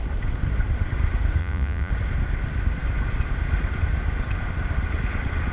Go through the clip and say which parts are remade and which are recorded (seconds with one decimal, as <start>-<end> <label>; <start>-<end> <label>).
0.0-1.4 recorded; 1.4-1.9 remade; 1.9-5.5 recorded